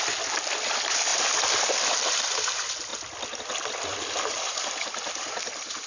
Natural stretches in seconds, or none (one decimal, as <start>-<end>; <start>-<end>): 0.0-5.9